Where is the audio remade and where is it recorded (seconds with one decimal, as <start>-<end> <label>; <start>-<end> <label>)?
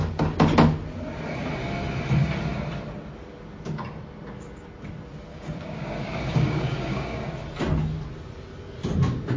0.0-5.3 recorded; 5.3-7.3 remade; 7.3-9.4 recorded